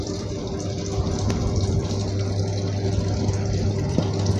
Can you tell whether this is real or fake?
fake